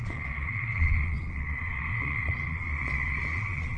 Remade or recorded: remade